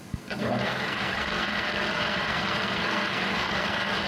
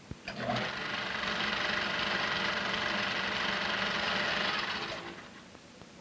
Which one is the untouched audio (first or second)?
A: second